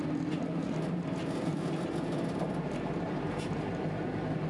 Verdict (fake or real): fake